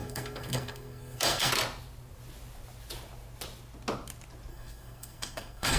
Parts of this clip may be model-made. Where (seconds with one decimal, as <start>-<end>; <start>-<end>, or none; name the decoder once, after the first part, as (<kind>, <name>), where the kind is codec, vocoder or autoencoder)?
0.0-1.5 (codec, SNAC); 4.5-5.8